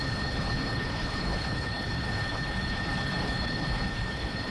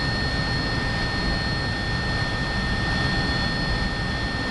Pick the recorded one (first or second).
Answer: second